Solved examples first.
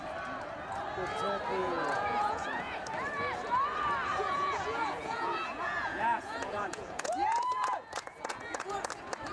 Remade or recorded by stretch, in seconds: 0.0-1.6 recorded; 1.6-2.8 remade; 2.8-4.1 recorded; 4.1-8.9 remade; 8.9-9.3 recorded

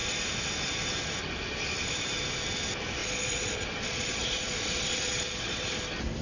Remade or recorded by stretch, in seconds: 0.0-3.0 recorded; 3.0-5.8 remade; 5.8-6.2 recorded

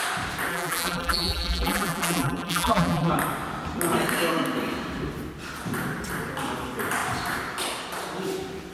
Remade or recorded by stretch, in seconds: 0.0-0.5 recorded; 0.5-3.1 remade; 3.1-8.7 recorded